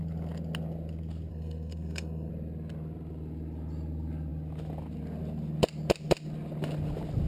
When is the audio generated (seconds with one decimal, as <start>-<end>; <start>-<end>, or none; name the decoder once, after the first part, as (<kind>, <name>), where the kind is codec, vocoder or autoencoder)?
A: 1.3-2.3 (codec, SNAC)